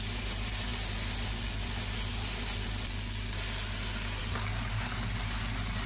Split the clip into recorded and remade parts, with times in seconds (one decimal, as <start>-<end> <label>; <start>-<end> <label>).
0.0-5.9 recorded